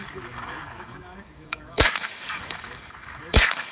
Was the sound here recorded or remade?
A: remade